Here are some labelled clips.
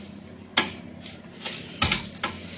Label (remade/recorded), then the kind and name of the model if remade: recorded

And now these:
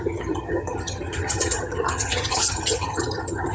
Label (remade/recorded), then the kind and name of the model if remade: remade, vocoder, HiFi-GAN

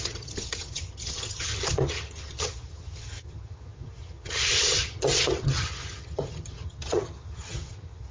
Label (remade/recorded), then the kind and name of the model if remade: remade, vocoder, HiFi-GAN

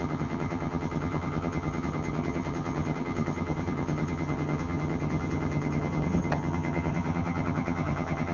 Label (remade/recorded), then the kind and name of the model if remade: remade, vocoder, HiFi-GAN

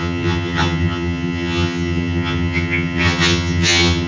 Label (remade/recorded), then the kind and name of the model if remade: remade, vocoder, HiFi-GAN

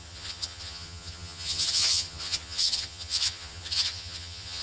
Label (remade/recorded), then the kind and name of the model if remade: remade, vocoder, HiFi-GAN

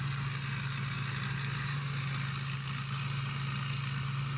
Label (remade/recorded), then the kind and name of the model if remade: recorded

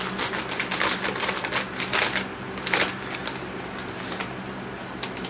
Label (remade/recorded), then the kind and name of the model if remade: recorded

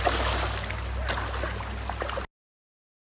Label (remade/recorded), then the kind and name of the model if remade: recorded